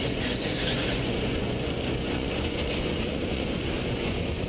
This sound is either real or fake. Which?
fake